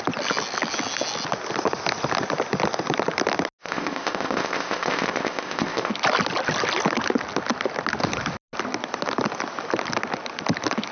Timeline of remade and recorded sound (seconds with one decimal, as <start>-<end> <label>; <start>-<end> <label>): 0.0-3.6 recorded; 3.6-5.9 remade; 5.9-10.9 recorded